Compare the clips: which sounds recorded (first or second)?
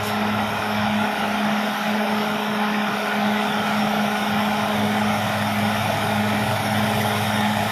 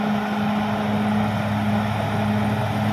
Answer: second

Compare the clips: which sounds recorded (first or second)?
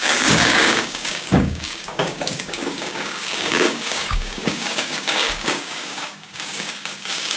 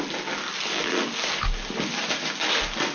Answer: second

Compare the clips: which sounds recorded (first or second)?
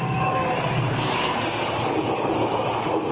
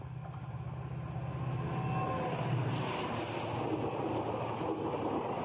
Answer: second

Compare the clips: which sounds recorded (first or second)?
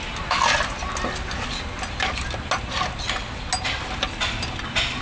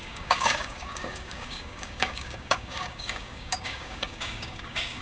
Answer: first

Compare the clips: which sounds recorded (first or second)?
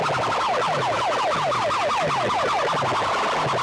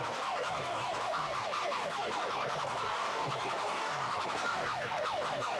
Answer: first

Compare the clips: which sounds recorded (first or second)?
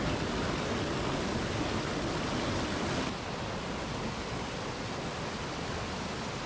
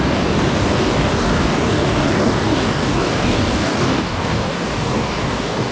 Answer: first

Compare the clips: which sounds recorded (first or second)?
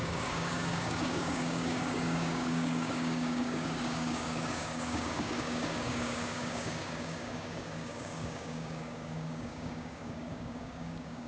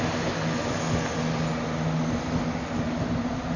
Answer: second